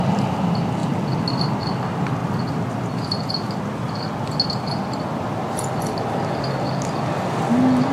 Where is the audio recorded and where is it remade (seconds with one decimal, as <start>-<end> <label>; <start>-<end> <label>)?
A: 0.0-7.9 recorded